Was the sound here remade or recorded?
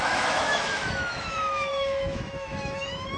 remade